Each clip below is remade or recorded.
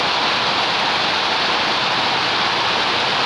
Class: recorded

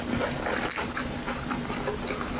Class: recorded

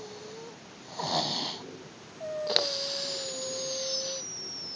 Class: recorded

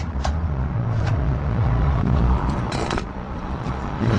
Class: remade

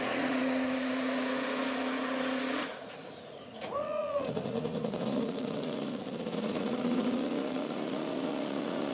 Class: remade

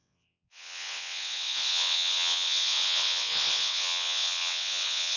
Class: remade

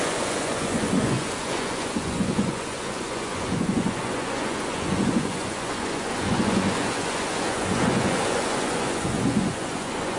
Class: remade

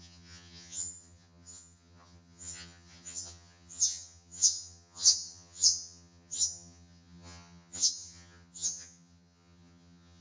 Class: remade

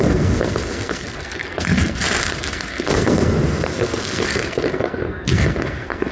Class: remade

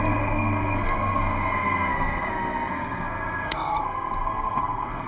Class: remade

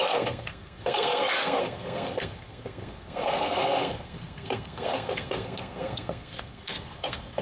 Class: remade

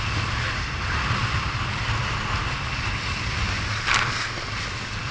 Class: recorded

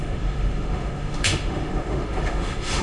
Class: remade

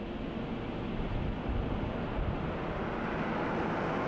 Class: recorded